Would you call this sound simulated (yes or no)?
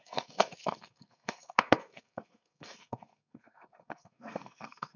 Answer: yes